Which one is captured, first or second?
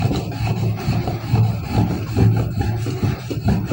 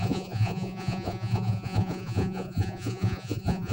first